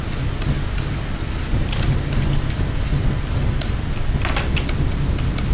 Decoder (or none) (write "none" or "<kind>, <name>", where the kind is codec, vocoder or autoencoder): none